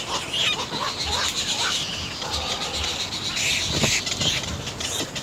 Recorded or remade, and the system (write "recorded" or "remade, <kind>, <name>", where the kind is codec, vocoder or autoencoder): recorded